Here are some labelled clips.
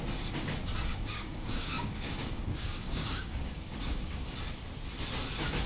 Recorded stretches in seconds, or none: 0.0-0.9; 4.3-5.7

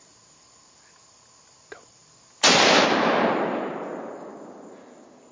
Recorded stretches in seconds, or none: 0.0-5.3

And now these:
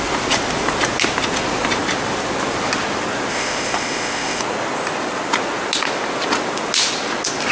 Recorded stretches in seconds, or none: 0.0-3.3; 4.4-7.5

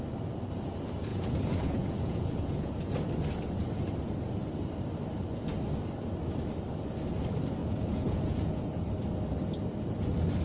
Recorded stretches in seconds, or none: 0.0-1.1; 2.7-7.6; 8.6-10.4

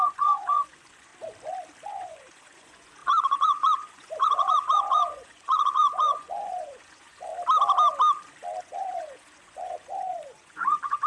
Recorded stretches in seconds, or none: 1.1-1.9; 7.3-8.6

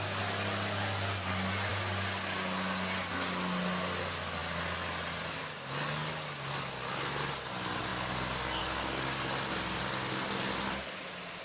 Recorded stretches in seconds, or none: 0.0-11.4